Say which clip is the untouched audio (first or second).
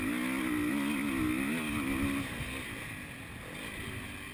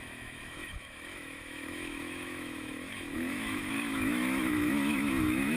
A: first